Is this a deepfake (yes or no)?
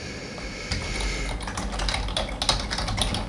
no